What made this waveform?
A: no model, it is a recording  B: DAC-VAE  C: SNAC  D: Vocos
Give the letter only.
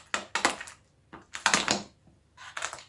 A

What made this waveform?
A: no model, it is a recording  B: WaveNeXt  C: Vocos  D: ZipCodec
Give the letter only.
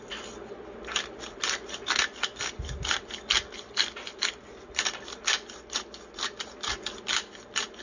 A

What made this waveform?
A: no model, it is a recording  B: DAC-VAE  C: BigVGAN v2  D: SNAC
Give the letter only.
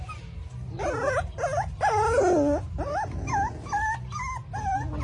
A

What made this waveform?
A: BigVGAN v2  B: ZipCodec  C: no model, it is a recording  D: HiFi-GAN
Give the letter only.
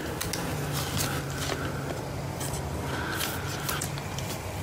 C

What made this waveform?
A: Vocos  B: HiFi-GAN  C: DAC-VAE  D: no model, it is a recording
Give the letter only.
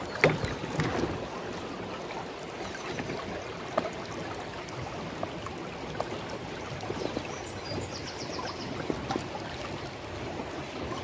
D